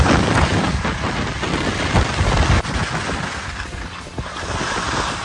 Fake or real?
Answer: real